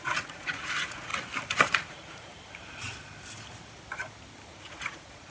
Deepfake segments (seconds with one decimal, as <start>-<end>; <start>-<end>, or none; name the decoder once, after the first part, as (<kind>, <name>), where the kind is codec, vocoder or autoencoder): 0.0-1.1 (vocoder, Vocos); 1.7-2.3; 4.5-5.3